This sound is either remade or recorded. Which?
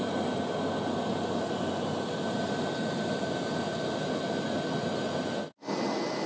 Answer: recorded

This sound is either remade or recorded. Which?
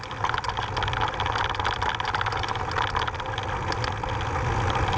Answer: recorded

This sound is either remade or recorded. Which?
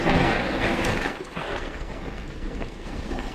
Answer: remade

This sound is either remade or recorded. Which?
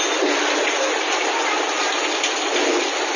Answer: recorded